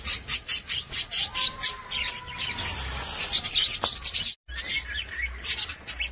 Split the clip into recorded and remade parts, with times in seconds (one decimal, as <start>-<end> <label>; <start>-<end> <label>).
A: 0.0-6.1 recorded